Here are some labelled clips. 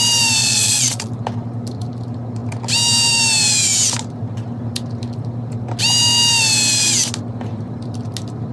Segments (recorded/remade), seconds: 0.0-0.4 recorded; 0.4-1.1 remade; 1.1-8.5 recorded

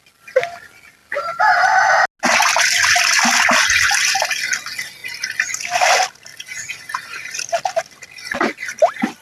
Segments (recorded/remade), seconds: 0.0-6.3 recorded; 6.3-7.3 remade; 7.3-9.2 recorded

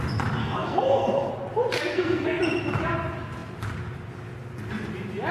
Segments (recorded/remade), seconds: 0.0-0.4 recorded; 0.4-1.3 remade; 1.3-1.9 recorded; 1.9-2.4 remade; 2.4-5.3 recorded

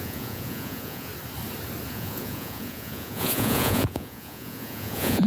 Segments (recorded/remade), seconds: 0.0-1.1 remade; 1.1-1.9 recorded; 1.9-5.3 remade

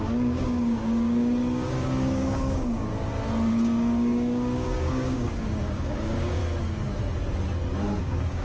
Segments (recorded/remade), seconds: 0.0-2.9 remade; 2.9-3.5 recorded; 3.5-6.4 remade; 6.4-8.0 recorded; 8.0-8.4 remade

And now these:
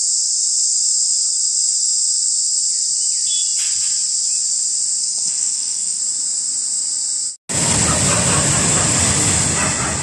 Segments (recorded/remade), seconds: 0.0-5.0 recorded; 5.0-6.0 remade; 6.0-10.0 recorded